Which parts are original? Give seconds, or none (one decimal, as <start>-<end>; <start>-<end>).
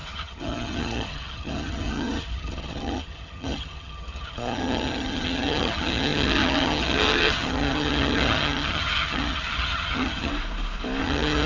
10.3-11.0